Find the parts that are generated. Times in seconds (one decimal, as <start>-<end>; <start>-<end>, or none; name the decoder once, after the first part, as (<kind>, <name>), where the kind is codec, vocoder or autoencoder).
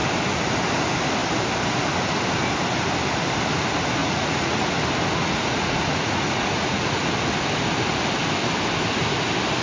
4.0-4.8 (vocoder, Vocos); 5.2-7.0